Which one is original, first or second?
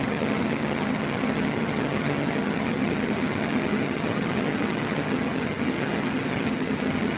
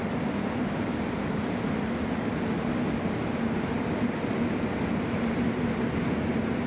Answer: second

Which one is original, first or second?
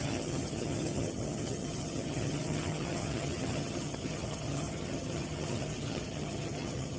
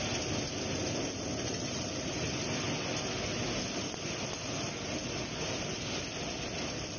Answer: second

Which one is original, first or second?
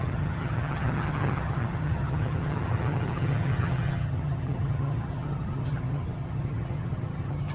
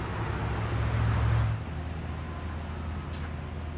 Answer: second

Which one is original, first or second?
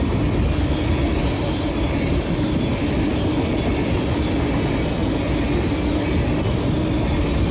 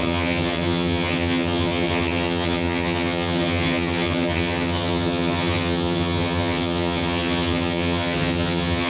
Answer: first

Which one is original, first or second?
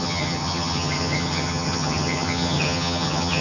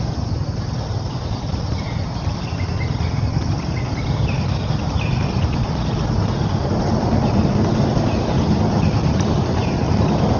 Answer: second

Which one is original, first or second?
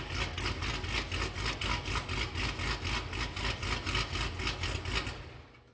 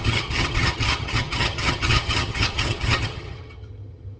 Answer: first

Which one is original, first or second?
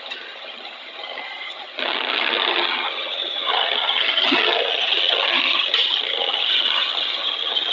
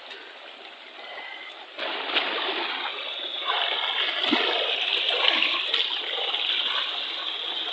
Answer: second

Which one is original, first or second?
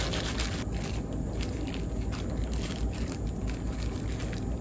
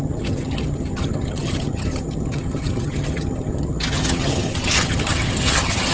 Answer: first